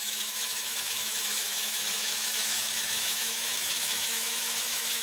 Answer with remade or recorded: remade